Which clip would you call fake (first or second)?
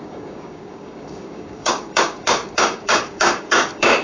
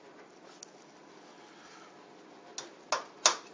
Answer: first